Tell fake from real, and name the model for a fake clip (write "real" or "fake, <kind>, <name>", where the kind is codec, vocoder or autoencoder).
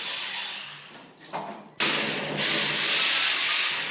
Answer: real